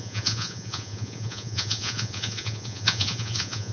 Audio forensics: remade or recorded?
remade